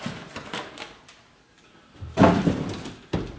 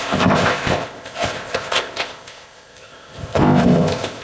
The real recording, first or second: first